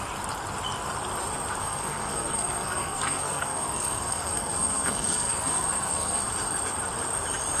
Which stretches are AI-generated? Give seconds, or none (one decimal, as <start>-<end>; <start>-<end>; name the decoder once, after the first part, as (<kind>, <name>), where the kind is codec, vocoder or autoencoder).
1.6-6.2 (codec, SNAC)